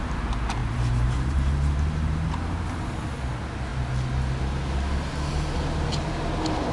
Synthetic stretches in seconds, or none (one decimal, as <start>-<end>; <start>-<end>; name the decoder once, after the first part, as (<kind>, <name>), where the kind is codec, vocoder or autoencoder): 0.6-2.3 (vocoder, BigVGAN v2)